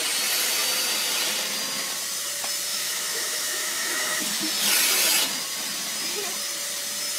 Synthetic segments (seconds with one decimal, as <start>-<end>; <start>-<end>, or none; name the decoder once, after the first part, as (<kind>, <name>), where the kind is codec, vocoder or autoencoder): 2.7-4.2 (autoencoder, DAC-VAE)